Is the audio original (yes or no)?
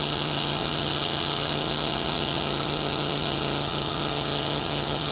no